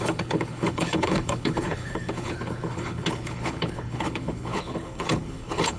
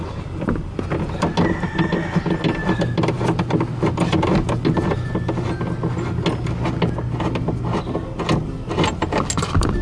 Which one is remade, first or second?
first